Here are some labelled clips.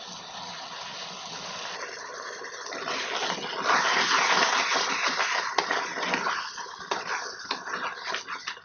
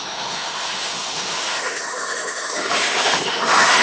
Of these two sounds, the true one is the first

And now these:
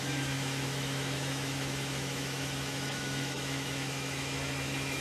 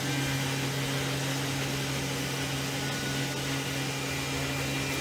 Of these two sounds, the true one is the second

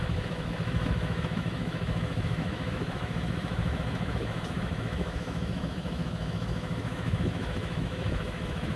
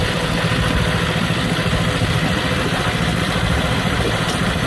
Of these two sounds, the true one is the second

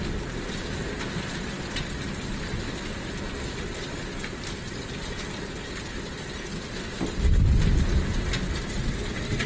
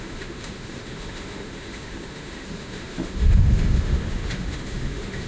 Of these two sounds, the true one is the first